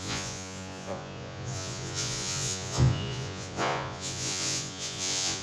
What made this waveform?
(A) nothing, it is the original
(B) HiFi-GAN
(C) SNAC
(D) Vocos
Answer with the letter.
D